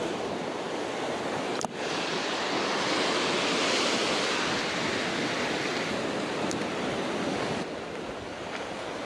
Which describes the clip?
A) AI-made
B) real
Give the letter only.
B